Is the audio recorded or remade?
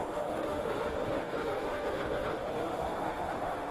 remade